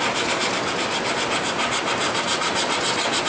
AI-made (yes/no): no